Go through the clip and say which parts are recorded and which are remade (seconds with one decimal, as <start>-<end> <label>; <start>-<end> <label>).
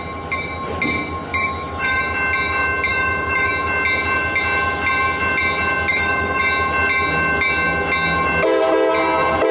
0.0-1.3 recorded; 1.3-2.0 remade; 2.0-2.9 recorded; 2.9-3.5 remade; 3.5-5.9 recorded; 5.9-6.4 remade; 6.4-9.5 recorded